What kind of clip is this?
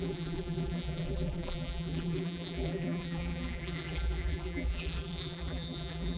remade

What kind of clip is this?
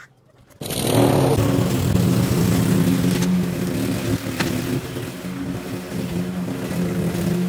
recorded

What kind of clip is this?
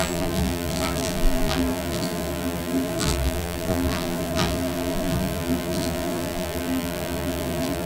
remade